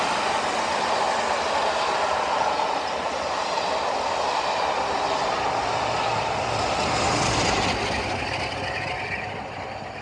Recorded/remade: recorded